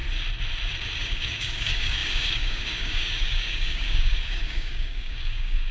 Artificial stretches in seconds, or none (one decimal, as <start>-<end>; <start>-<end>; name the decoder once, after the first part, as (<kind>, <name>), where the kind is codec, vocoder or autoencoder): 1.0-5.7 (codec, DAC)

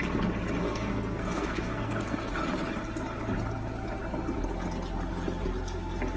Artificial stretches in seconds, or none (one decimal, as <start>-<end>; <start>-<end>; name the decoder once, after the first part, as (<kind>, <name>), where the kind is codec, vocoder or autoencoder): 0.6-2.3 (codec, SNAC)

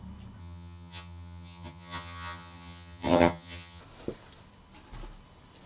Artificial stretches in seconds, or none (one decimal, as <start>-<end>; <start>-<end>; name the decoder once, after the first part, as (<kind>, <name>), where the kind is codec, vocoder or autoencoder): 0.4-3.8 (vocoder, HiFi-GAN)

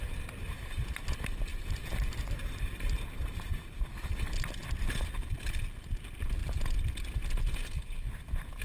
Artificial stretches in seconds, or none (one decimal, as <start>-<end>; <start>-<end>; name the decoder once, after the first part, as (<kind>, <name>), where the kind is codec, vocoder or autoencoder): 1.5-3.6 (vocoder, BigVGAN v2)

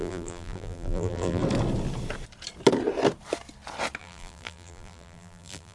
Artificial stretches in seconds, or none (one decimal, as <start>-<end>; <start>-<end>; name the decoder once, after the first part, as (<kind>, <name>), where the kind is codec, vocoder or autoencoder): 0.0-1.4 (vocoder, BigVGAN v2); 4.0-5.7